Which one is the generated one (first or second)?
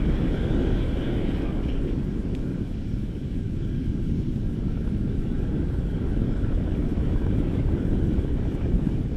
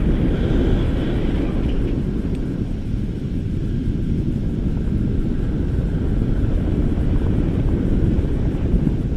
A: first